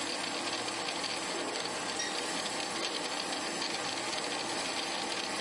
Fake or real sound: real